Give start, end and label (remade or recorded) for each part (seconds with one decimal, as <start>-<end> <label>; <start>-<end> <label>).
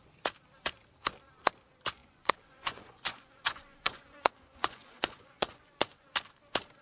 0.0-2.0 recorded; 2.0-6.1 remade; 6.1-6.8 recorded